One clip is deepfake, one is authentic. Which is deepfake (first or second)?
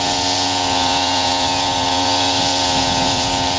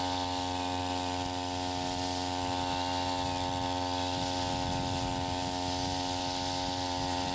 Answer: first